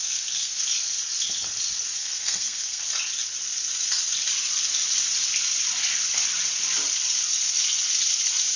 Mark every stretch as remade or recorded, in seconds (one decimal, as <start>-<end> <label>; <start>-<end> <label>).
0.0-0.6 remade; 0.6-2.0 recorded; 2.0-2.8 remade; 2.8-8.6 recorded